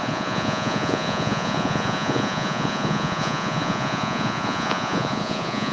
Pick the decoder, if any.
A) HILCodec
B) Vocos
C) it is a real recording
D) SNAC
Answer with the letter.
B